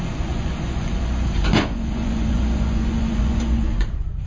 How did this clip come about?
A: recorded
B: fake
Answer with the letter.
B